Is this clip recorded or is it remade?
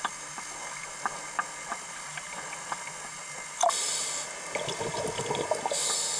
recorded